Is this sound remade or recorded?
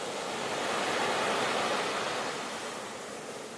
remade